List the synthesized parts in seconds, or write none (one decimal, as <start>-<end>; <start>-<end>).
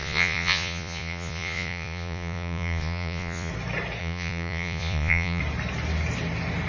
0.0-3.5; 4.0-5.4